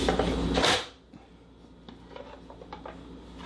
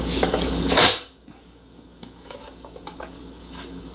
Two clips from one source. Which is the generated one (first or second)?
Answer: second